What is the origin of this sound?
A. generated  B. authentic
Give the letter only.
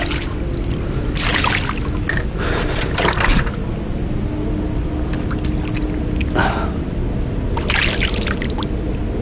B